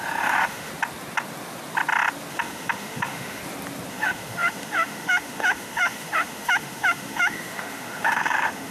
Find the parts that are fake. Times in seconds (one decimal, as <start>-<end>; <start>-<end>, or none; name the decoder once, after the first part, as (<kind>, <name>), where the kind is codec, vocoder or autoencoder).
0.0-0.7 (autoencoder, DAC-VAE); 2.3-3.4; 3.9-8.7